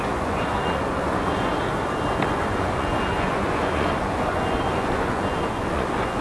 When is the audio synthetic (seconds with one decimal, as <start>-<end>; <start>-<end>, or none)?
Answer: 0.0-1.5; 2.3-6.2